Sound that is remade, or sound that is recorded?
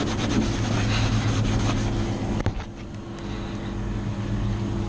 recorded